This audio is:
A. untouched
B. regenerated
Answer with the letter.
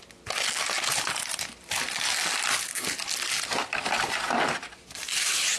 A